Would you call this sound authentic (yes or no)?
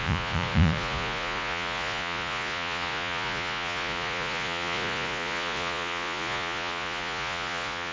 no